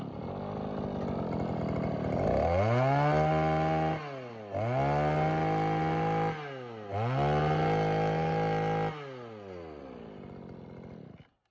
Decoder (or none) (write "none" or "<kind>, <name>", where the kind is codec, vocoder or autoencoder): none